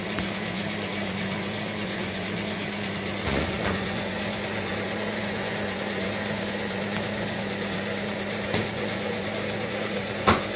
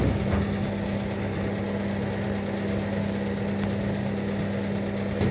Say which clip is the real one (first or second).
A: second